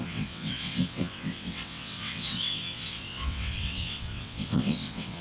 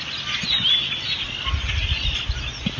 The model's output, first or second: first